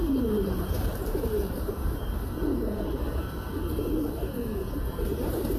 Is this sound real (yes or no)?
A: no